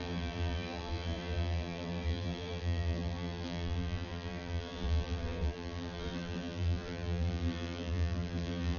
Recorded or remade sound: remade